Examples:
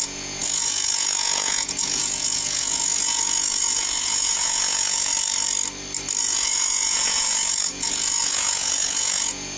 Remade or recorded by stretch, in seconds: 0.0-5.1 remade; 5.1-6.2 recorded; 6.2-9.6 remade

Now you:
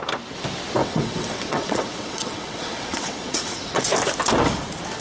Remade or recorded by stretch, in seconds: 0.0-0.8 recorded; 0.8-3.8 remade; 3.8-5.0 recorded

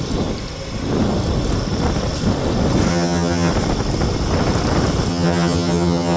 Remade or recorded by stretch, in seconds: 0.0-2.9 recorded; 2.9-3.5 remade; 3.5-5.1 recorded; 5.1-6.2 remade

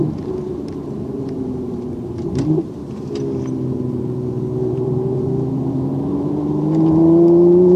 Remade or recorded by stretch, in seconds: 0.0-2.8 remade; 2.8-4.7 recorded; 4.7-7.8 remade